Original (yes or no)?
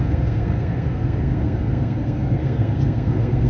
no